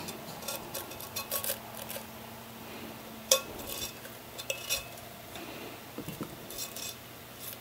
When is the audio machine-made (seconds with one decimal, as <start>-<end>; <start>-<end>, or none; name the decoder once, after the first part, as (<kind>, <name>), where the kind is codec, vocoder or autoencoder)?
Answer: none